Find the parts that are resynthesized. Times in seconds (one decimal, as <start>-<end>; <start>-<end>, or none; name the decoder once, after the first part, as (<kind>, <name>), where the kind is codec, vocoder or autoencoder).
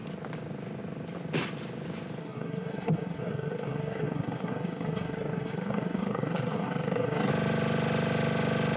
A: 2.2-7.3 (codec, SNAC)